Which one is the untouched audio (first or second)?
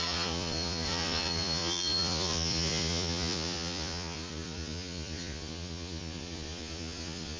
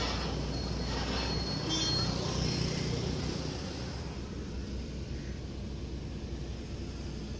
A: second